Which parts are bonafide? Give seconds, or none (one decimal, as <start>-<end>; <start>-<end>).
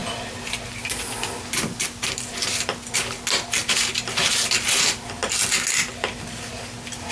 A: 0.0-7.1